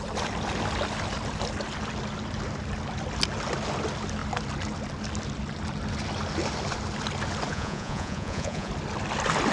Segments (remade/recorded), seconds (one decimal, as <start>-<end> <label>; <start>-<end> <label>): 0.0-7.5 recorded; 7.5-8.7 remade; 8.7-9.5 recorded